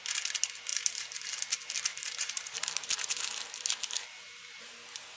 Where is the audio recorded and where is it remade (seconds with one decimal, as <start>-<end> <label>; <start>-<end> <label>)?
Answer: 0.0-0.7 recorded; 0.7-1.4 remade; 1.4-1.9 recorded; 1.9-5.2 remade

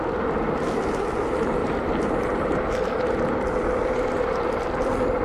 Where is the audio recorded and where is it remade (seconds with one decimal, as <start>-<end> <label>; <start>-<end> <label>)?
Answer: 0.0-5.2 recorded

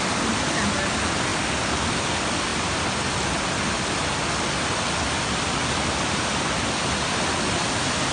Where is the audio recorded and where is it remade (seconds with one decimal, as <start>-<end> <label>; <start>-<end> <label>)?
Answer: 0.0-8.1 recorded